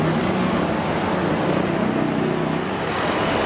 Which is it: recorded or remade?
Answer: recorded